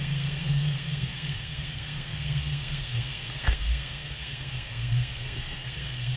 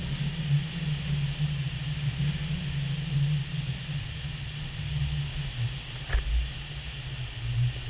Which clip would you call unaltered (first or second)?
second